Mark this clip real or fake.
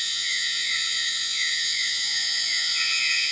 fake